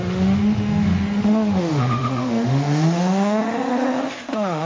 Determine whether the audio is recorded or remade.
remade